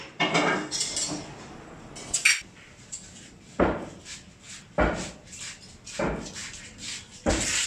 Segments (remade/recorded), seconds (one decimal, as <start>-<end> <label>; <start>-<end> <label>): 0.0-7.7 recorded